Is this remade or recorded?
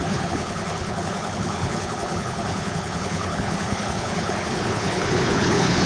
remade